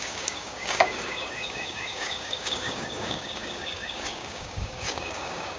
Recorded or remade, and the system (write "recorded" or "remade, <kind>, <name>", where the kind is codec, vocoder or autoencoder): remade, codec, DAC